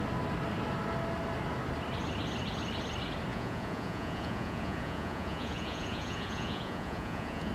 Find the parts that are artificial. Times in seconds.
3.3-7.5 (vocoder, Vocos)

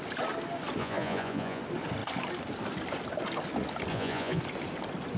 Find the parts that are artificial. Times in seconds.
0.8-1.6 (vocoder, Vocos); 3.9-4.4

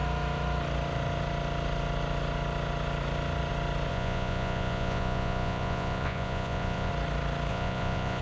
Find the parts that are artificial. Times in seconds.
3.9-6.9 (vocoder, Vocos); 7.5-8.2

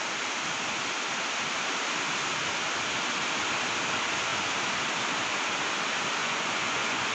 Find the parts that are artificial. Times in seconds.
6.2-7.1 (vocoder, Vocos)

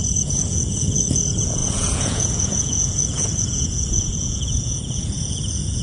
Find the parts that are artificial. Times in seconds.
0.0-5.8 (vocoder, Vocos)

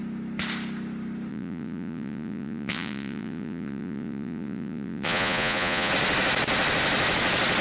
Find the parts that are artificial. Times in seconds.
1.3-5.9 (vocoder, Vocos)